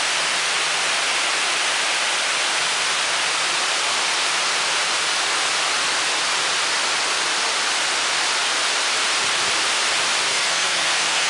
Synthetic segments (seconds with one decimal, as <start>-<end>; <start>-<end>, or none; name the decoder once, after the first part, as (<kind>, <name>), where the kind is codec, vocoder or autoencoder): 10.3-11.3 (codec, SNAC)